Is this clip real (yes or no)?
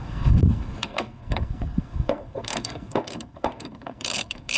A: no